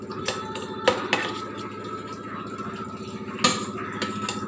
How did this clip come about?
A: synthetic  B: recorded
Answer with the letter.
B